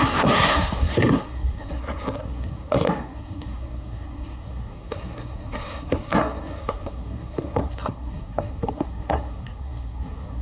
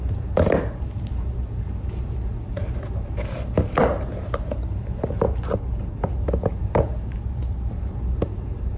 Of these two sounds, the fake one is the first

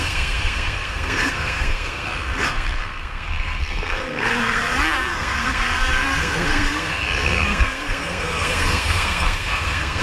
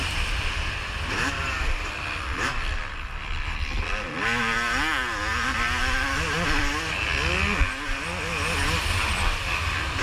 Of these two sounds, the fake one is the first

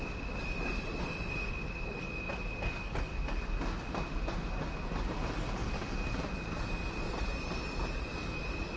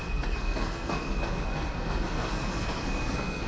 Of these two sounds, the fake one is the second